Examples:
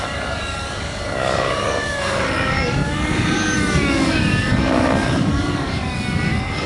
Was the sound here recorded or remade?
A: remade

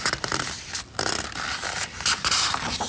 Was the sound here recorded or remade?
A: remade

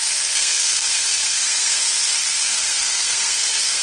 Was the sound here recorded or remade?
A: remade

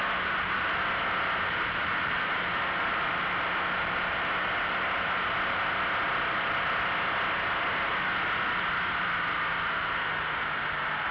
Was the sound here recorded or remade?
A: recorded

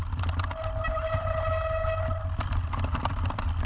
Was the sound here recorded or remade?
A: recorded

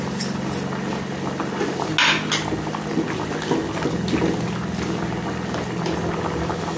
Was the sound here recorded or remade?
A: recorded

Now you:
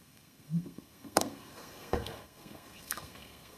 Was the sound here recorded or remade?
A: remade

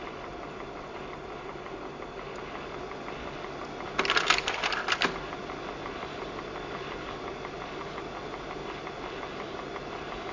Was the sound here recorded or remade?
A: recorded